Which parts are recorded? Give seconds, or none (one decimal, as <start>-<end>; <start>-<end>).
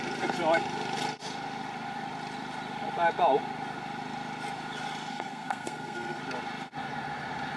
0.0-5.1; 6.2-7.6